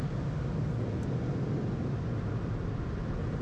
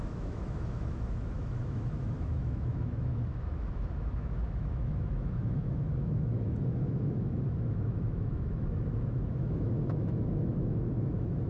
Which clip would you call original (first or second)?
first